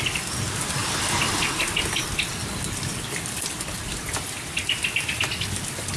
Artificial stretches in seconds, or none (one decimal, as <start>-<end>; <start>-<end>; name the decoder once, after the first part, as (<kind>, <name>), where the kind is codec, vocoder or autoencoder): none